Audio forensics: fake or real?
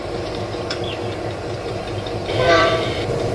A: fake